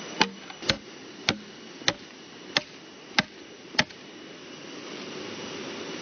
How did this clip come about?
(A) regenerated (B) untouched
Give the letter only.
B